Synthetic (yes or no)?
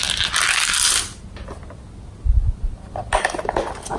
no